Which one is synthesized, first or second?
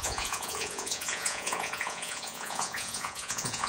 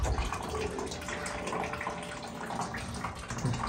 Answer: first